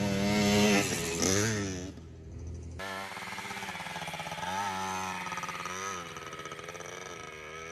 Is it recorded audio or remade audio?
recorded